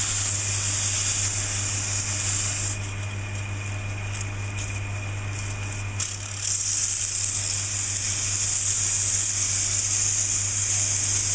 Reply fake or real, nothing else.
real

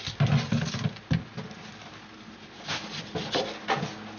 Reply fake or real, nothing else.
real